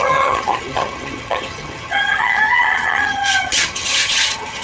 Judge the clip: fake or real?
fake